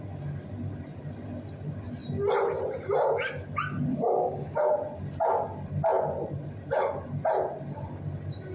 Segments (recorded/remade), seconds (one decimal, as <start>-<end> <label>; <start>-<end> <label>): 0.0-3.9 recorded; 3.9-4.7 remade; 4.7-8.5 recorded